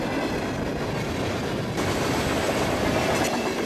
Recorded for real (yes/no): yes